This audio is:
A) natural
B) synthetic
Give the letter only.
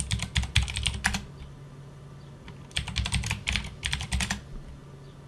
A